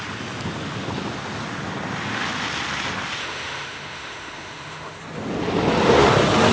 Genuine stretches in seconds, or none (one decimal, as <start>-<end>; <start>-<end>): 0.0-3.2; 5.0-6.5